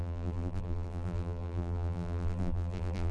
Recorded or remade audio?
remade